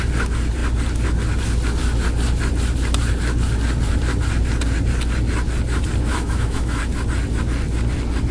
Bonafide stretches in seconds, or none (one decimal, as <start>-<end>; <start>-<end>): 0.0-6.1; 6.8-8.3